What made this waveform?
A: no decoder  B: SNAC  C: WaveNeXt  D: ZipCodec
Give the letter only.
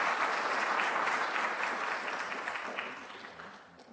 A